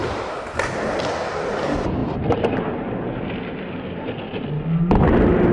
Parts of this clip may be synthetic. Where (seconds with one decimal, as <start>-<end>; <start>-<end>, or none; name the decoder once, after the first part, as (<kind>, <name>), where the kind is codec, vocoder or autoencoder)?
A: none